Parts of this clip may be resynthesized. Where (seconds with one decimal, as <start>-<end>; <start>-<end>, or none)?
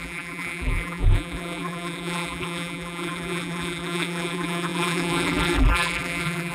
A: 0.0-6.5